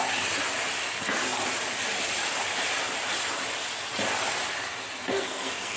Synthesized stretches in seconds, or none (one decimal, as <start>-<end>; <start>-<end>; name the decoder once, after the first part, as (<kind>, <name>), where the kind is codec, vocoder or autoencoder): 5.1-5.8 (codec, SNAC)